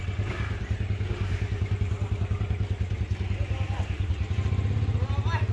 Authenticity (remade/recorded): recorded